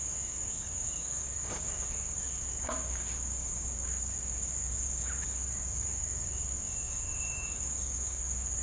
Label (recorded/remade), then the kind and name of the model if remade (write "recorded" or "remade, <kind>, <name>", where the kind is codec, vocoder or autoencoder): remade, codec, DAC